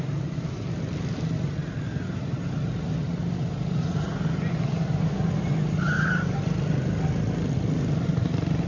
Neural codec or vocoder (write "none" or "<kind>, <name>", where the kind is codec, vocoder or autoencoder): none